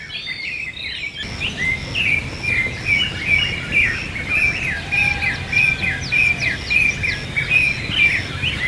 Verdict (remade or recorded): recorded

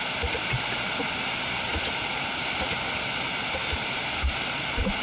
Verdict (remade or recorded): remade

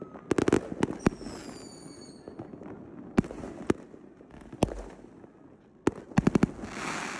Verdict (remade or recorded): recorded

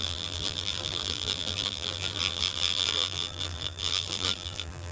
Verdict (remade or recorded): remade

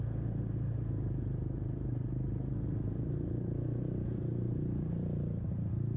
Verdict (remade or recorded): remade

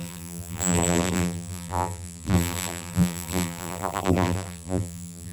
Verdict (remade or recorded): remade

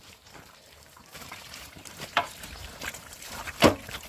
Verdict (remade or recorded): remade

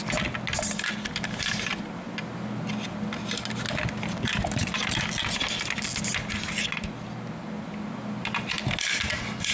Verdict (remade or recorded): recorded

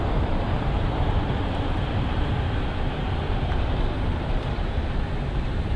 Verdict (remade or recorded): remade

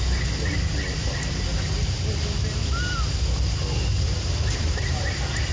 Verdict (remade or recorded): recorded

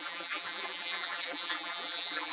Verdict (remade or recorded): remade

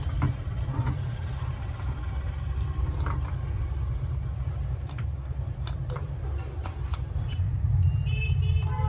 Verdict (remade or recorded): remade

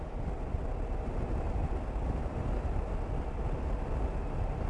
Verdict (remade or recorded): recorded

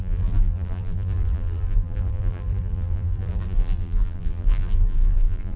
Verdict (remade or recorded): remade